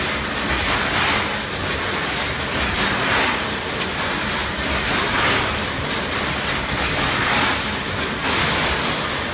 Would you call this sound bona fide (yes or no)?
yes